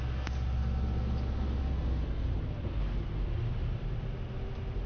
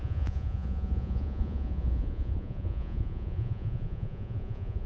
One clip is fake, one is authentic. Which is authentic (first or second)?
first